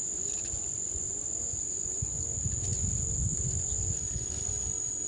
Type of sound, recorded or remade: remade